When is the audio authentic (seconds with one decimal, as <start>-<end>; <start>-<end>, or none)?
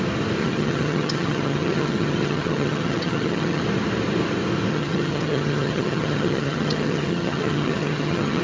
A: 0.0-0.4; 3.6-4.7